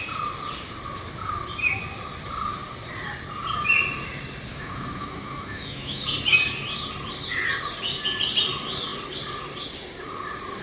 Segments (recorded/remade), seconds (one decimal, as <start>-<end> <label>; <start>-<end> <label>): 0.0-4.5 recorded; 4.5-6.0 remade; 6.0-10.6 recorded